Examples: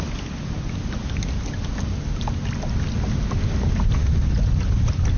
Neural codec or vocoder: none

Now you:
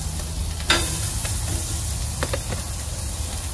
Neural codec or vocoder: none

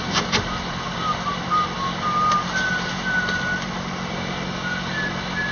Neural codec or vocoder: none